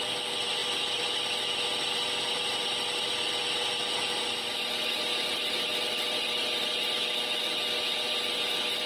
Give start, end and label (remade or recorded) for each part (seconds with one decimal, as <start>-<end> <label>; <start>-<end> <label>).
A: 0.0-8.9 recorded